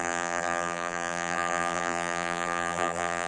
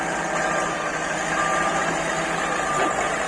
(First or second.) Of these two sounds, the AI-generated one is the first